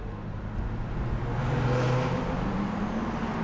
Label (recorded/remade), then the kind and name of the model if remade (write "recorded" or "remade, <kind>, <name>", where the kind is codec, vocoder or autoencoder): recorded